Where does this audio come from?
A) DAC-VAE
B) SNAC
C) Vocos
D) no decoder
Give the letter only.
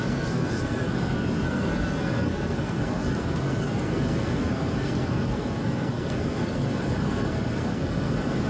B